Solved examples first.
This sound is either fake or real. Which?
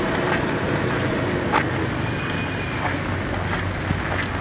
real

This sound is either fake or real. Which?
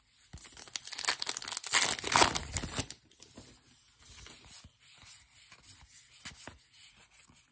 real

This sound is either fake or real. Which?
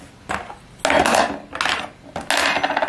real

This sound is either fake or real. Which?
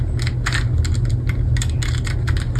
real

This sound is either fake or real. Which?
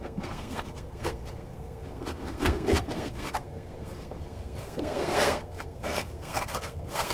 fake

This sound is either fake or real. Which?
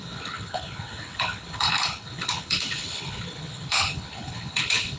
fake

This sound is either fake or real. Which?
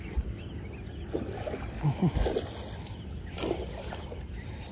real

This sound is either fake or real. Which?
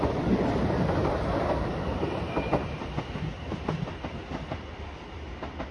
fake